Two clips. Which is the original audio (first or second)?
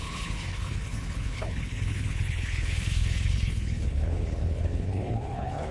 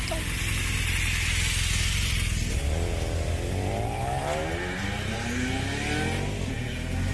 second